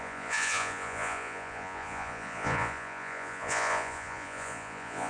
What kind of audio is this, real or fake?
fake